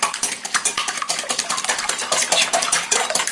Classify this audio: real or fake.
fake